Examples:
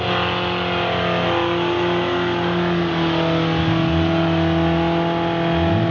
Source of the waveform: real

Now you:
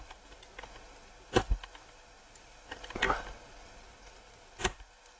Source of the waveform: real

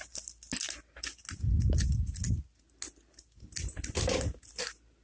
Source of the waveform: real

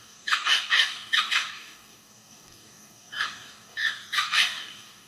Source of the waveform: fake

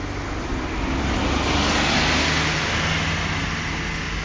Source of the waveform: real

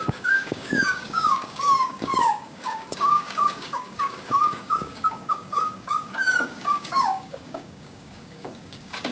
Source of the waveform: fake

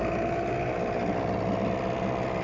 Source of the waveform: real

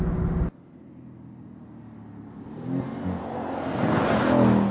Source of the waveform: real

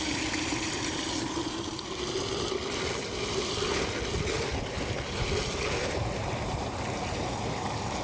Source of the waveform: real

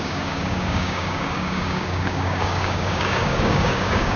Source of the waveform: fake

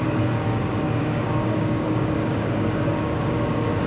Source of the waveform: fake